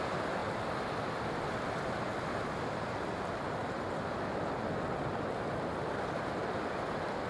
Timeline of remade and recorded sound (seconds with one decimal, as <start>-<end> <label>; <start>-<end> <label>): 0.0-3.6 recorded; 3.6-4.8 remade; 4.8-7.3 recorded